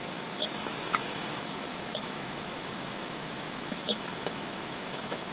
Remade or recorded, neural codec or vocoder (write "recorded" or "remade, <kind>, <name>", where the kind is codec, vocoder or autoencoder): remade, autoencoder, DAC-VAE